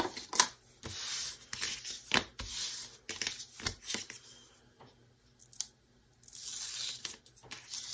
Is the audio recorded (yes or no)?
yes